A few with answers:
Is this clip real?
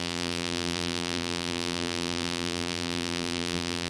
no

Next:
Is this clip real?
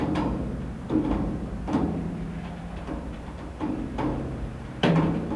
no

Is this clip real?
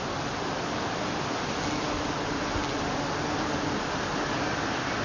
yes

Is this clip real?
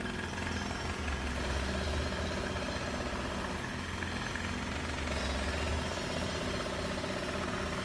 yes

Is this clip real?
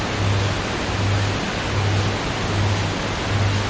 yes